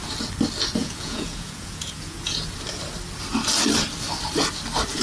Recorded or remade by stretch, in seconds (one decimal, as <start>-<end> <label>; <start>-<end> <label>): 0.0-0.8 recorded; 0.8-2.5 remade; 2.5-5.0 recorded